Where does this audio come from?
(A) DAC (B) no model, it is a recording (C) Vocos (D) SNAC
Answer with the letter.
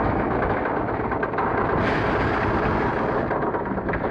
B